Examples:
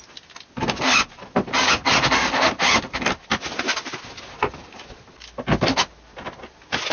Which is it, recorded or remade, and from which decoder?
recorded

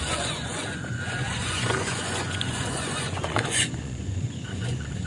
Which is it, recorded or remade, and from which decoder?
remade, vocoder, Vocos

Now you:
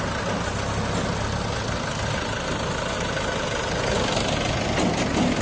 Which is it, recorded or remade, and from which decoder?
recorded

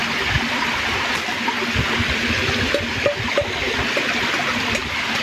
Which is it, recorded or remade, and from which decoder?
recorded